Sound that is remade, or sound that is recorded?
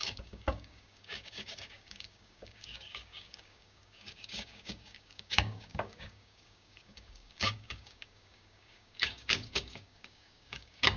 remade